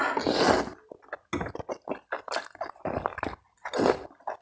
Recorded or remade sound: recorded